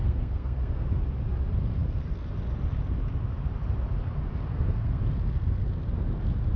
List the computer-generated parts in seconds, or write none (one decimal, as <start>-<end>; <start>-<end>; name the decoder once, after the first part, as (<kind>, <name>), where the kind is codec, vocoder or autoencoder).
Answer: 0.0-0.8 (codec, SNAC); 4.5-5.0